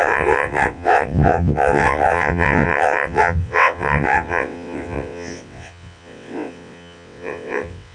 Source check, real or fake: fake